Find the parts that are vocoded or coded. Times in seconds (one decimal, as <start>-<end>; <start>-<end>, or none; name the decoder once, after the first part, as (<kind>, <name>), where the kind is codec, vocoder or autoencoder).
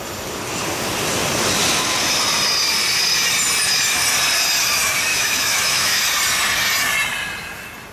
5.1-6.0 (autoencoder, DAC-VAE)